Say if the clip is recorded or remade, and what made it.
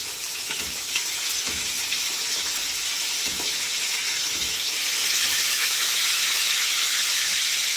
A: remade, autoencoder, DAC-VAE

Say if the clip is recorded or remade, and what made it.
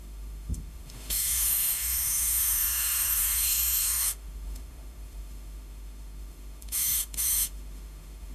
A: remade, autoencoder, DAC-VAE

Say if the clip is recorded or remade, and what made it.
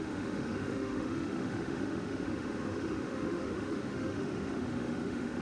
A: remade, autoencoder, DAC-VAE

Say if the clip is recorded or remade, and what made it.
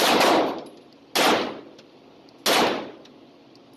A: recorded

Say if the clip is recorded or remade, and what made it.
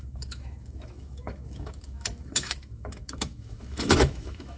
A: remade, autoencoder, DAC-VAE